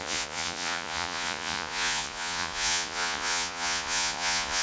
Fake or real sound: fake